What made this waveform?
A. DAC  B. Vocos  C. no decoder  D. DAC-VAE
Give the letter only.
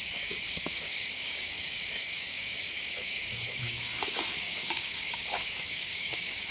A